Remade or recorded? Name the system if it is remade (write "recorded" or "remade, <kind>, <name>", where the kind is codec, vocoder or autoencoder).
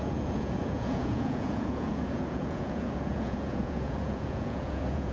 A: remade, vocoder, Vocos